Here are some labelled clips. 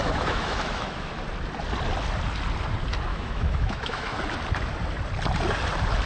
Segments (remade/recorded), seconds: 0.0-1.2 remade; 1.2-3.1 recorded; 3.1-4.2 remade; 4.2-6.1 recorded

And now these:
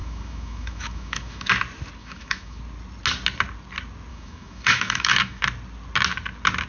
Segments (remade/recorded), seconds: 0.0-1.5 remade; 1.5-2.0 recorded; 2.0-2.6 remade; 2.6-4.1 recorded; 4.1-5.4 remade; 5.4-6.7 recorded

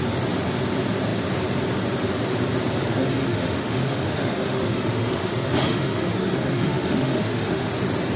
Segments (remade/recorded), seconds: 0.0-2.9 recorded; 2.9-7.7 remade; 7.7-8.2 recorded

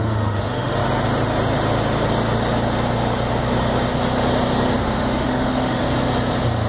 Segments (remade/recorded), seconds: 0.0-0.8 remade; 0.8-4.8 recorded; 4.8-5.8 remade; 5.8-6.7 recorded

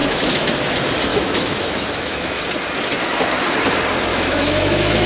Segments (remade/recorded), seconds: 0.0-0.5 remade; 0.5-1.1 recorded; 1.1-2.4 remade; 2.4-4.1 recorded; 4.1-5.1 remade